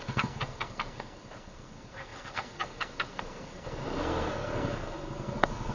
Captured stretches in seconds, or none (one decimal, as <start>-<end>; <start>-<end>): none